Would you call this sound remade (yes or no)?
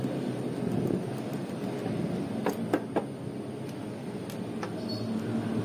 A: no